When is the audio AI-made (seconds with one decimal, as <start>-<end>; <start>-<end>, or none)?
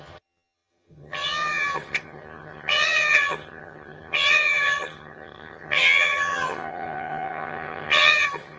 0.0-8.6